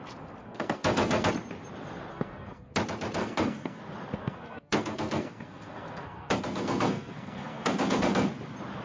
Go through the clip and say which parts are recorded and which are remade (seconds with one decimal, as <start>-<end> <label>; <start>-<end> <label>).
0.0-0.4 recorded; 0.4-1.3 remade; 1.3-2.1 recorded; 2.1-2.7 remade; 2.7-3.2 recorded; 3.2-3.8 remade; 3.8-4.2 recorded; 4.2-8.3 remade; 8.3-8.8 recorded